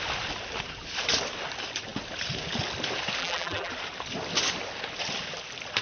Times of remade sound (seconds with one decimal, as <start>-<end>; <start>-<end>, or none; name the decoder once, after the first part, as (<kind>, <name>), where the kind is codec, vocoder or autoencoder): 3.2-3.7 (vocoder, BigVGAN v2)